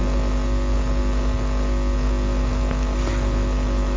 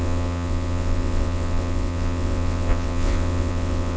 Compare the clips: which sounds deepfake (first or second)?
second